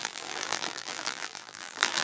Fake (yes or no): yes